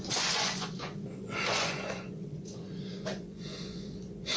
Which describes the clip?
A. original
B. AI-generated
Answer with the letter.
B